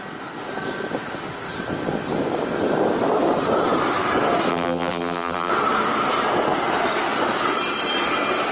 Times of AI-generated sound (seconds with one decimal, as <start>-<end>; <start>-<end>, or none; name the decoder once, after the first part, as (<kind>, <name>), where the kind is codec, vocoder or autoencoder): 4.5-5.5 (vocoder, BigVGAN v2)